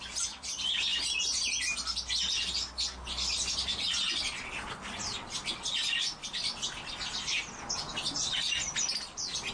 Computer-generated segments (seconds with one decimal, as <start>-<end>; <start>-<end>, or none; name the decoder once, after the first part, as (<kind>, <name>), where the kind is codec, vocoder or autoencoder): none